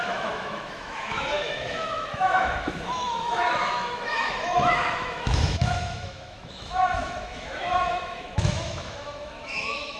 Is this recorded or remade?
remade